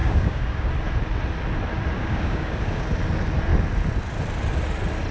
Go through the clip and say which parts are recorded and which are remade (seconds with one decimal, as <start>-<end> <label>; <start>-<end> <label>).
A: 0.0-0.7 remade; 0.7-2.0 recorded; 2.0-2.8 remade; 2.8-5.1 recorded